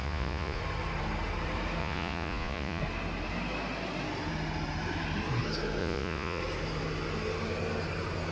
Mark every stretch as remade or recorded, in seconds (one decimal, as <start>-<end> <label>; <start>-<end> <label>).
0.0-0.6 remade; 0.6-1.8 recorded; 1.8-2.8 remade; 2.8-5.8 recorded; 5.8-6.4 remade; 6.4-8.3 recorded